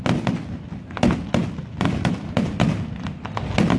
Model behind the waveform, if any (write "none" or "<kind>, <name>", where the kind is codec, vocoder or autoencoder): none